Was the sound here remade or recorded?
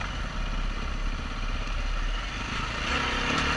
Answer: recorded